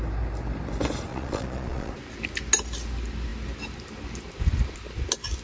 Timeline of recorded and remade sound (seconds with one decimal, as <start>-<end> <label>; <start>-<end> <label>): 0.0-1.1 recorded; 1.1-1.9 remade; 1.9-5.4 recorded